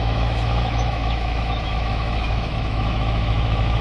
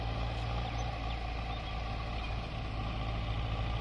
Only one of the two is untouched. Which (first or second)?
second